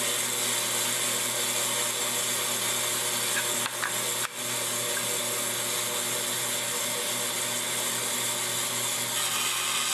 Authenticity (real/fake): real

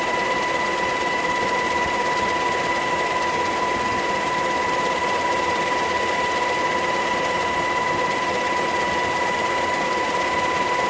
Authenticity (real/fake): fake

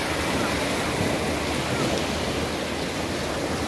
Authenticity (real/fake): real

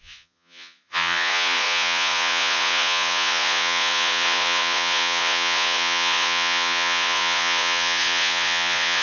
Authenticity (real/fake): fake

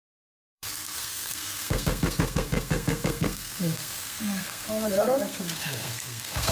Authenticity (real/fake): fake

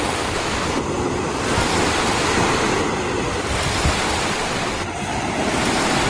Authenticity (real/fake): real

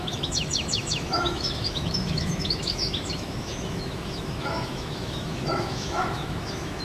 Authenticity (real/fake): fake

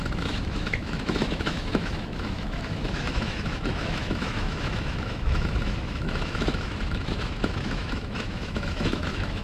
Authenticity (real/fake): fake